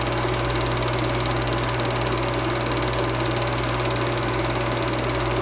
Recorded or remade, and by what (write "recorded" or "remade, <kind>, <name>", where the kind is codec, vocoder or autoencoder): recorded